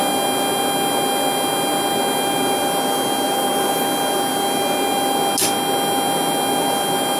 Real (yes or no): yes